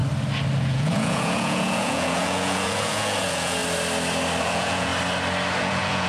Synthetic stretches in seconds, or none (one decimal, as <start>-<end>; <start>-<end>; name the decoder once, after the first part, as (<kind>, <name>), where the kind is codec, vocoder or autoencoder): 0.6-3.6 (vocoder, Vocos); 4.4-4.9; 5.6-6.1